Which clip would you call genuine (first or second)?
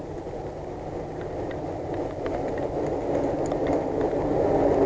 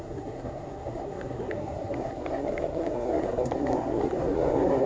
first